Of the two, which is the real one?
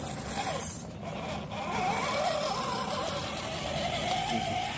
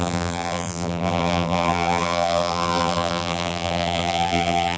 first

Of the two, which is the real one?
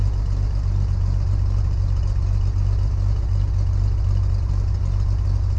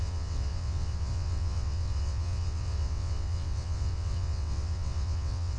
first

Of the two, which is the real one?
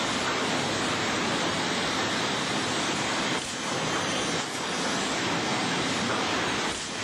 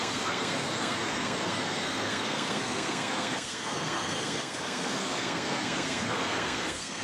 first